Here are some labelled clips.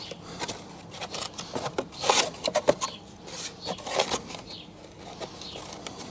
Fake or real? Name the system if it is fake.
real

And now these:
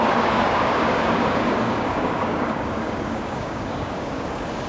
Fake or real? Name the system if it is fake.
fake, codec, DAC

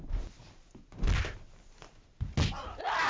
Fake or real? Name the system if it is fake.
real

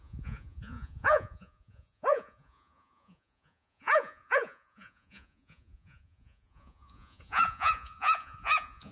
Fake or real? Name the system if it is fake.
fake, vocoder, Vocos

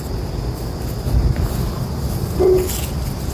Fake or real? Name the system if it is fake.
real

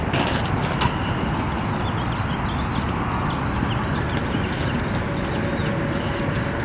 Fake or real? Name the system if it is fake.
real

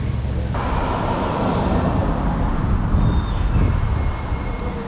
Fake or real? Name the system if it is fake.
real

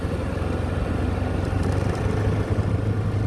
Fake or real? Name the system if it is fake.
real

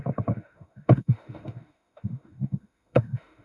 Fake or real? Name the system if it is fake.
fake, autoencoder, DAC-VAE